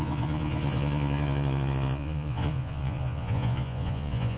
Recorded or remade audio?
remade